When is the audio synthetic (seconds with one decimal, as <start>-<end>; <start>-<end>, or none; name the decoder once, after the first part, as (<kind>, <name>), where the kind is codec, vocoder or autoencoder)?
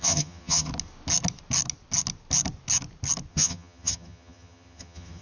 0.0-0.7 (vocoder, HiFi-GAN); 3.3-5.2